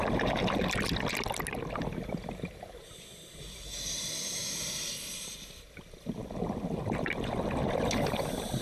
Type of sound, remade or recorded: recorded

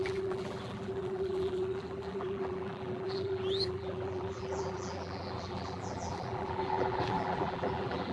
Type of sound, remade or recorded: remade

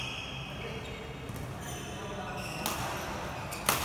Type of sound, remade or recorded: recorded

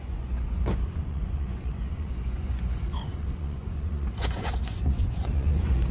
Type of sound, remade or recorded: remade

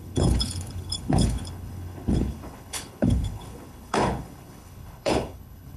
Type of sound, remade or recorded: remade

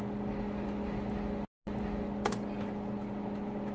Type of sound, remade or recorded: recorded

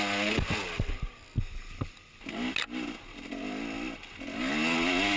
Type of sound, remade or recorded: recorded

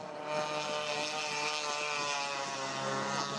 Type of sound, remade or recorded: recorded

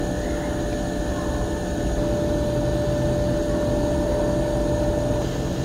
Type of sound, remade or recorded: recorded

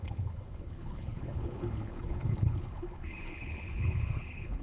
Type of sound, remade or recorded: remade